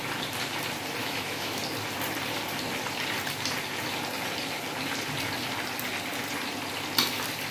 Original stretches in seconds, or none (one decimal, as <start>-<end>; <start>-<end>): 0.0-1.0; 1.6-7.5